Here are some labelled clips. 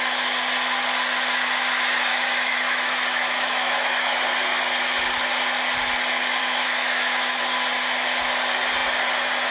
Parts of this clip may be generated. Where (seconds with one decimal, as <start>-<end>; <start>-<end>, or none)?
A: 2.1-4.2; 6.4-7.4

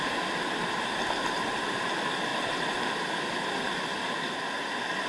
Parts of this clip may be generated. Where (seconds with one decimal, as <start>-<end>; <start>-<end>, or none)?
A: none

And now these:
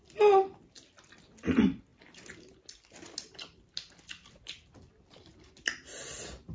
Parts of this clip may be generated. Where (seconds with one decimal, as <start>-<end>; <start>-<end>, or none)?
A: none